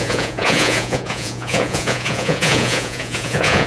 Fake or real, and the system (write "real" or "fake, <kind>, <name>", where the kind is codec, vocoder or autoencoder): fake, vocoder, Vocos